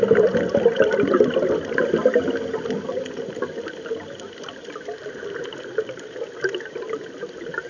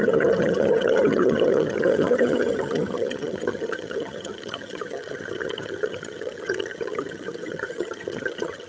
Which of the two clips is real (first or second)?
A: first